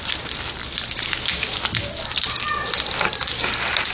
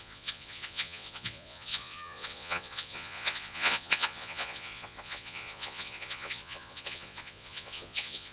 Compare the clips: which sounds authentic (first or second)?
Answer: first